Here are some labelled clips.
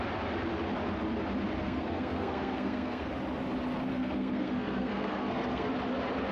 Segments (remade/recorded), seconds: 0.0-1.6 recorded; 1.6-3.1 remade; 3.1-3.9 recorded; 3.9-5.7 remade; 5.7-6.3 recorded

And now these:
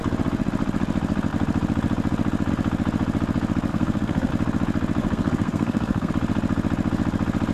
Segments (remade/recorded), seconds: 0.0-3.7 recorded; 3.7-4.3 remade; 4.3-5.0 recorded; 5.0-6.1 remade; 6.1-7.5 recorded

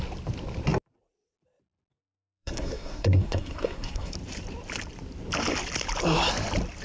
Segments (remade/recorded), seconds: 0.0-1.9 recorded; 1.9-4.1 remade; 4.1-6.8 recorded

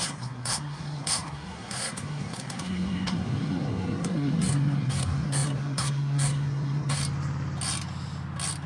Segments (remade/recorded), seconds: 0.0-7.0 remade; 7.0-8.7 recorded